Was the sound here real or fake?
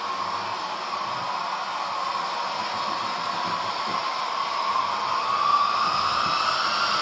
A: real